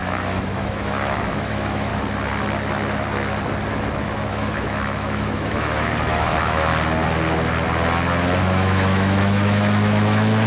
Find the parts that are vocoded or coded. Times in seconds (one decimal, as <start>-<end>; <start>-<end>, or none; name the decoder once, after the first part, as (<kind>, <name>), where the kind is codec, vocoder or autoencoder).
0.0-1.9 (autoencoder, DAC-VAE); 4.3-6.7; 8.4-10.5